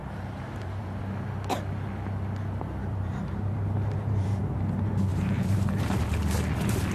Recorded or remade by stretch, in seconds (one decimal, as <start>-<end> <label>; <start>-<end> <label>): 0.0-1.0 remade; 1.0-2.9 recorded; 2.9-4.4 remade; 4.4-5.1 recorded; 5.1-5.8 remade; 5.8-6.9 recorded